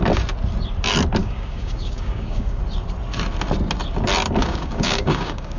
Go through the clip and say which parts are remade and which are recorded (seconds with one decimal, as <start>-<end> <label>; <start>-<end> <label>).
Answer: 0.0-1.2 recorded; 1.2-2.6 remade; 2.6-4.4 recorded; 4.4-5.6 remade